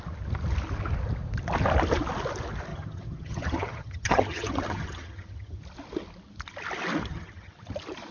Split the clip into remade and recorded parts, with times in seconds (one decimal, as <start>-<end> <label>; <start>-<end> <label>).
0.0-2.7 recorded; 2.7-5.6 remade; 5.6-7.0 recorded; 7.0-7.5 remade; 7.5-8.1 recorded